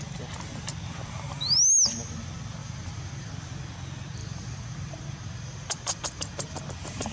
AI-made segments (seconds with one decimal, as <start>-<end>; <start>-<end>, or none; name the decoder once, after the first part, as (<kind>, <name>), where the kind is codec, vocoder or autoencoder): 2.6-3.3 (vocoder, BigVGAN v2); 4.2-6.6